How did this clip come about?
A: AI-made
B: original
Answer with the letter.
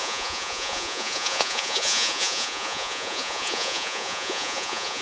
A